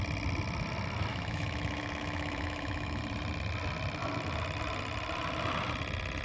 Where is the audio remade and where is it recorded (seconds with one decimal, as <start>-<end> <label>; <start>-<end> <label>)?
0.0-1.1 recorded; 1.1-3.0 remade; 3.0-6.2 recorded